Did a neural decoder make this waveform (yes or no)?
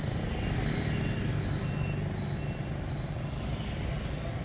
no